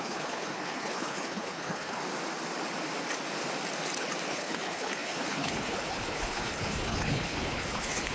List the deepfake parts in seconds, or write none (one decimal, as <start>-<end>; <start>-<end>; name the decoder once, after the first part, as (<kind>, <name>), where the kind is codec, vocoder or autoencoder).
0.0-2.0 (codec, HILCodec); 4.3-8.1